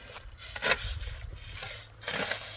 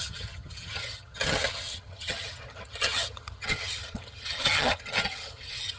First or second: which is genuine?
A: first